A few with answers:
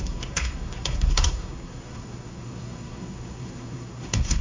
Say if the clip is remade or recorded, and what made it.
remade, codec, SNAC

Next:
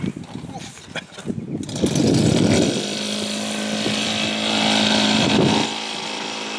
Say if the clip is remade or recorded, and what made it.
recorded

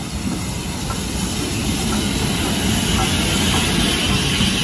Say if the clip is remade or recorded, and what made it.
recorded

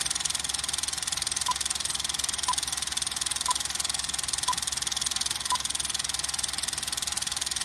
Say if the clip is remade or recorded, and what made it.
recorded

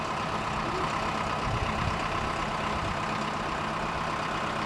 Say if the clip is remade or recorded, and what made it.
recorded